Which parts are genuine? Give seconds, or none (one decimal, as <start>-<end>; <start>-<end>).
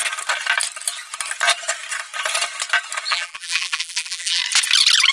0.0-3.1; 4.4-5.1